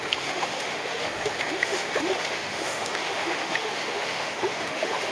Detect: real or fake fake